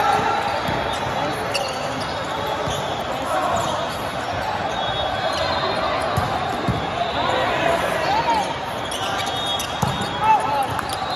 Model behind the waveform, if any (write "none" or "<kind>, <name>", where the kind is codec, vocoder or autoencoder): none